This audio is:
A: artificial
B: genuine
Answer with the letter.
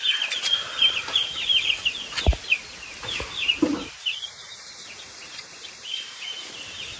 B